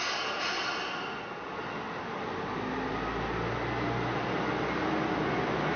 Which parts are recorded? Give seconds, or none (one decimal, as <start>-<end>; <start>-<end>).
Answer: 0.0-5.8

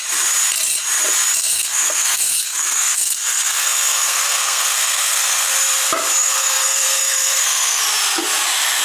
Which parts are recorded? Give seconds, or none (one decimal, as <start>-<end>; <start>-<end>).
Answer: 0.0-1.4; 5.5-6.2; 7.8-8.8

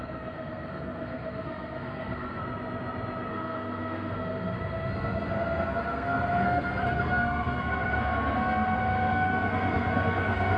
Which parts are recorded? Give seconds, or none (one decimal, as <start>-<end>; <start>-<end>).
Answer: 2.4-3.3

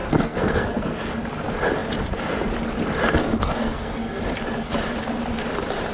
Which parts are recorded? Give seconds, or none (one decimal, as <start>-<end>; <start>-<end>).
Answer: 1.1-3.2; 4.2-5.9

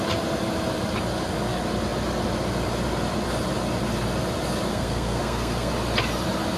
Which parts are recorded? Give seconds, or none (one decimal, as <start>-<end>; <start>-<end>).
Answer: 0.0-4.7; 5.7-6.6

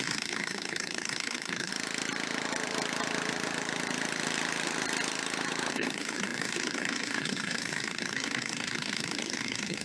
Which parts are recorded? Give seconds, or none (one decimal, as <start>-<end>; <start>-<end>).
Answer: 1.7-5.7

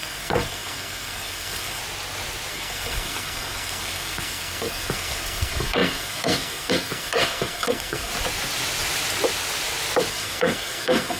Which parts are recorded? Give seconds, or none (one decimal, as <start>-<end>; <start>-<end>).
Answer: 1.8-2.5; 8.1-10.1